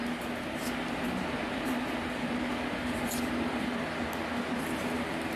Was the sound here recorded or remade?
recorded